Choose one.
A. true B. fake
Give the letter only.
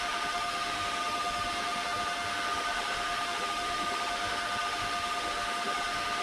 B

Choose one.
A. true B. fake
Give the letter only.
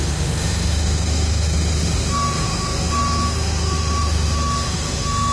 B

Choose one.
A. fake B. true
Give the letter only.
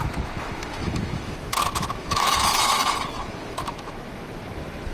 A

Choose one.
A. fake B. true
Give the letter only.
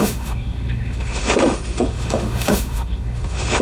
A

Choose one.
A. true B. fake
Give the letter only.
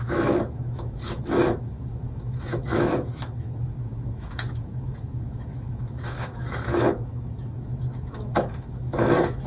B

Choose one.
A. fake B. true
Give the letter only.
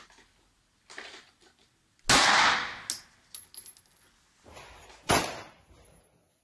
B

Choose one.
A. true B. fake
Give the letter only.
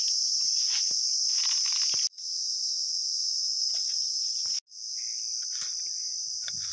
A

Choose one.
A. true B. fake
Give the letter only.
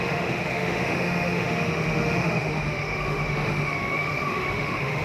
B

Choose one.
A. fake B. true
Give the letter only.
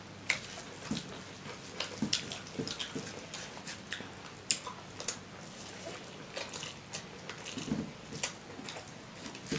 B